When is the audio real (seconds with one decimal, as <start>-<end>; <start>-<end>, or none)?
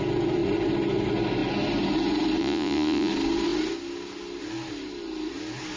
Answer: 0.0-2.4; 3.1-5.8